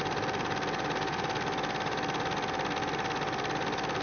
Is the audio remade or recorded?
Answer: recorded